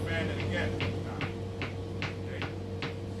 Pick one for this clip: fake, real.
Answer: real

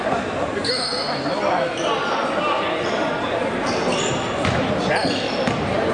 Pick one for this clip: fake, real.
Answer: real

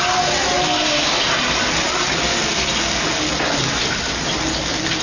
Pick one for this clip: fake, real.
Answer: real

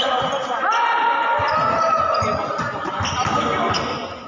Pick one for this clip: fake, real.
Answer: real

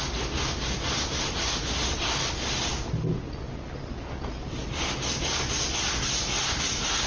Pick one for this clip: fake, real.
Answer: real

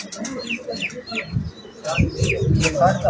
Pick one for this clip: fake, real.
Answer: real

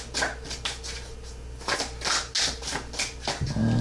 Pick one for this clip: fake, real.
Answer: real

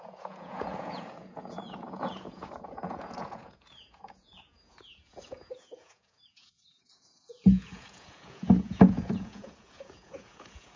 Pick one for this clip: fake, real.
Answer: fake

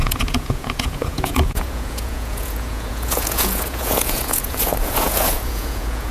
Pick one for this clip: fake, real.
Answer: fake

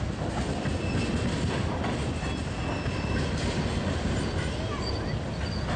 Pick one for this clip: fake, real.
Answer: real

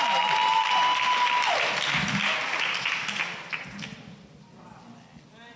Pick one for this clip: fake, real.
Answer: real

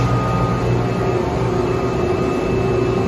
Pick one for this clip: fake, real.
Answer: real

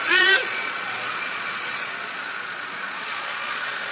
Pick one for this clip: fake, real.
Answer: fake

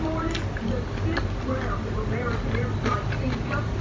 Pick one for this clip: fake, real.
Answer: real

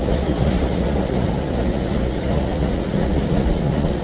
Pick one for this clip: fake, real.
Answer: fake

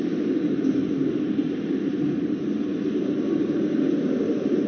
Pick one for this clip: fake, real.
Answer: real